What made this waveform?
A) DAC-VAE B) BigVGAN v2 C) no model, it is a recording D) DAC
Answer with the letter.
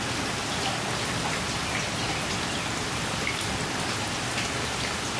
C